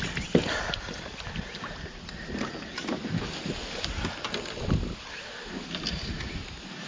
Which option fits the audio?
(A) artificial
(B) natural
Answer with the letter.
B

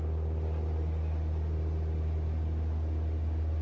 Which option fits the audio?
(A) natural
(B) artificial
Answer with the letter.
A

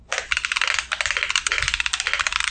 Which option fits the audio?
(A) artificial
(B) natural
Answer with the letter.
B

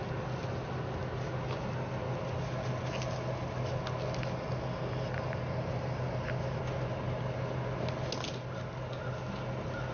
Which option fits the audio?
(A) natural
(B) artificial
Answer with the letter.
A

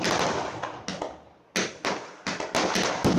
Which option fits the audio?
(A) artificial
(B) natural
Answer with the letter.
B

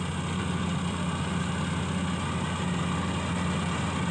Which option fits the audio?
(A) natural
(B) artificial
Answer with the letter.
A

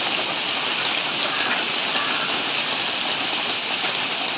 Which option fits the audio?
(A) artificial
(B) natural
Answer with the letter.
B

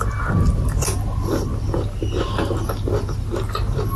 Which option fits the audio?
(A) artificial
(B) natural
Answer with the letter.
B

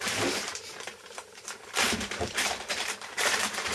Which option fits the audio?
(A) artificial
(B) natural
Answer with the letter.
A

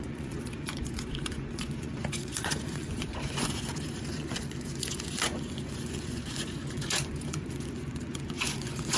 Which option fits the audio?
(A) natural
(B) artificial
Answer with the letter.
B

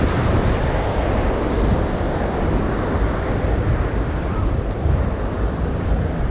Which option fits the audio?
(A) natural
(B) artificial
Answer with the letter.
B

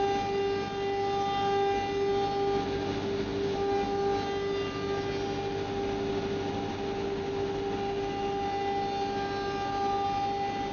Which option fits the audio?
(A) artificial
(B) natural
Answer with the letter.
B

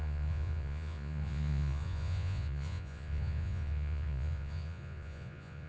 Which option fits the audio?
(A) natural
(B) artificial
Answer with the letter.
B